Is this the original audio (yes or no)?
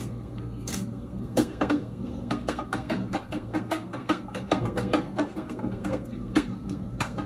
no